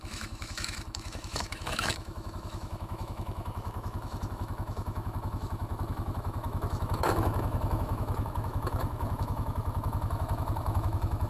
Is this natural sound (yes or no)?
no